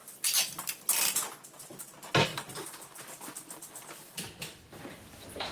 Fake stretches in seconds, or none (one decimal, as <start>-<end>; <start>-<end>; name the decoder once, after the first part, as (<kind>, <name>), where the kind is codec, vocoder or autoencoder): 2.3-5.1 (vocoder, BigVGAN v2)